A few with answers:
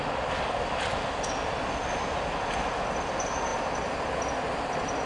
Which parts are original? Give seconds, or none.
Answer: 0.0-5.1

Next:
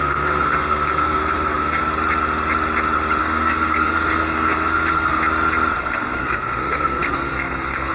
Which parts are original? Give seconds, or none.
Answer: 1.8-3.2; 5.2-5.8

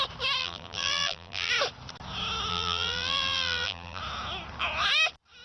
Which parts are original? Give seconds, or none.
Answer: 0.0-0.4; 1.5-2.5; 4.0-5.4

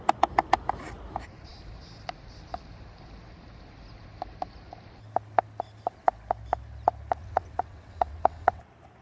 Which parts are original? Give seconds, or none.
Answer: 0.0-7.2; 8.6-9.0

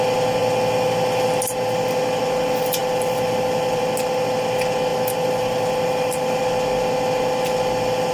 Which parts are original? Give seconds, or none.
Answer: 0.0-2.8; 3.8-4.9; 6.4-8.1

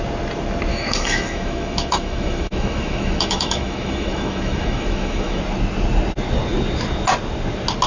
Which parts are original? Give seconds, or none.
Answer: 0.0-0.7; 5.4-7.9